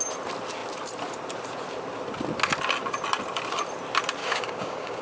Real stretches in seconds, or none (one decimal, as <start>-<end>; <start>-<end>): 0.0-4.2